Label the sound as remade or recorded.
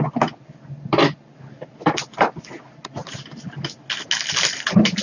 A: recorded